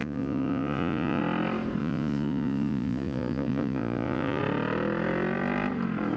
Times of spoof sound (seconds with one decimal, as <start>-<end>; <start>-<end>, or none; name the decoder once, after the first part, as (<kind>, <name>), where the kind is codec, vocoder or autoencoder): 0.0-1.2 (vocoder, Vocos); 1.8-4.4